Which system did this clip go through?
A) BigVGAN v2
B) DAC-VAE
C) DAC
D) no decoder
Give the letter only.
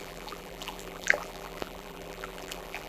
A